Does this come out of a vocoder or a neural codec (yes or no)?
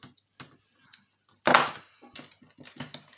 no